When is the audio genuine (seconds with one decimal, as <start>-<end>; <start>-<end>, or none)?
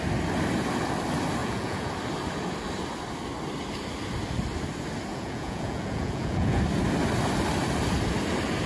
0.0-1.4; 1.9-5.1; 6.6-8.7